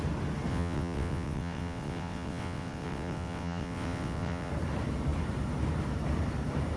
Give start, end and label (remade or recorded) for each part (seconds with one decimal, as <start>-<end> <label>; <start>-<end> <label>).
0.0-0.5 recorded; 0.5-4.5 remade; 4.5-6.8 recorded